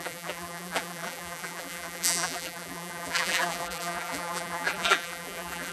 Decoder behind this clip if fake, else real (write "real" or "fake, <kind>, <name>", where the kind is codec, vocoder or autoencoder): fake, vocoder, BigVGAN v2